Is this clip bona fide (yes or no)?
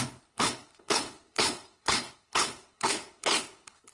no